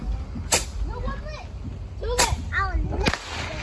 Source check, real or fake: real